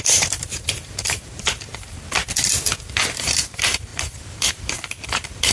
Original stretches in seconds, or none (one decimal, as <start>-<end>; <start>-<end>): 1.7-3.0